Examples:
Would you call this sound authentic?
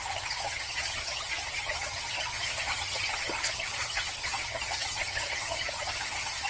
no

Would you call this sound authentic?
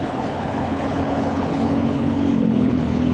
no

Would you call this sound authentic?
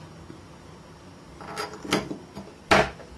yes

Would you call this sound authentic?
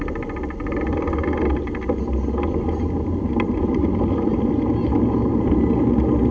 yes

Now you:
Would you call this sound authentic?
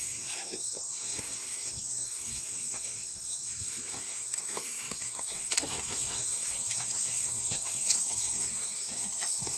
no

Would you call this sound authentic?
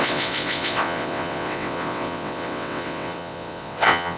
no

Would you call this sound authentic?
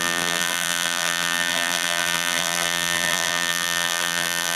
no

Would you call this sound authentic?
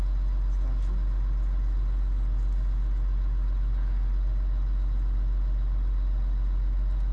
yes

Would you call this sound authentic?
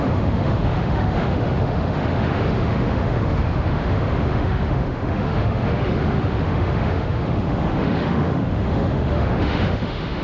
no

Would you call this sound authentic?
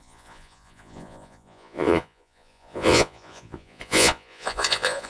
no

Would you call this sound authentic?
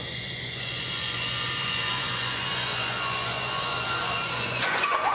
no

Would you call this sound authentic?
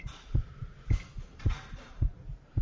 no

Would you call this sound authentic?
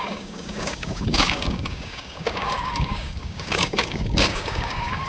no